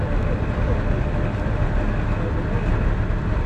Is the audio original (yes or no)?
yes